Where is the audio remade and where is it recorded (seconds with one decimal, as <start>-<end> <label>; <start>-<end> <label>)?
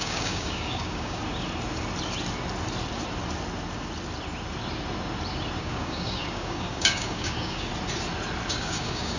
0.0-1.2 remade; 1.2-5.6 recorded; 5.6-7.7 remade; 7.7-8.5 recorded; 8.5-9.2 remade